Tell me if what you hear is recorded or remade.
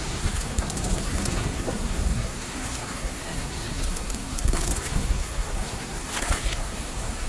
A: remade